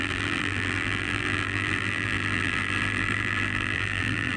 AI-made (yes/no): yes